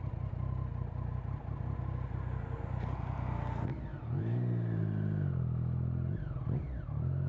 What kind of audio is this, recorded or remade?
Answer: recorded